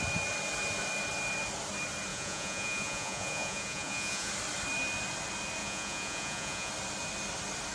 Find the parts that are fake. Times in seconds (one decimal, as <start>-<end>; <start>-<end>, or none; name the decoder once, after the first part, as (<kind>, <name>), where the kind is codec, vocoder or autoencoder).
2.1-4.3 (vocoder, Vocos); 5.6-6.7